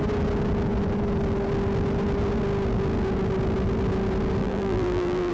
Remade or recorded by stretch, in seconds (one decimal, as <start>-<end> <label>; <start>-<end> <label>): 0.0-4.4 recorded; 4.4-5.3 remade